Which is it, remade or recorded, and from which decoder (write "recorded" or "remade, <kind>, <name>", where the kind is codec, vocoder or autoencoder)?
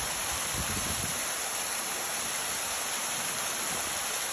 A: recorded